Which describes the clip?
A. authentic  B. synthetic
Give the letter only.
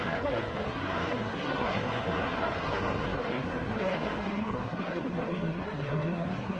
B